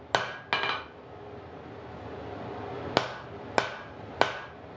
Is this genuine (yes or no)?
yes